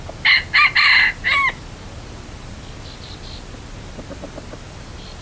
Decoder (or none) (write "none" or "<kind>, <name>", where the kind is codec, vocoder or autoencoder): none